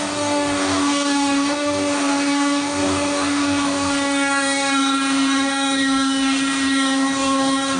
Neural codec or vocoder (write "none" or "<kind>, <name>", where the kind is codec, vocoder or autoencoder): codec, DAC